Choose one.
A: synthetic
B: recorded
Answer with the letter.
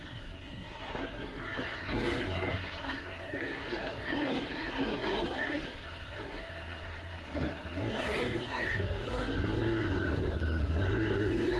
A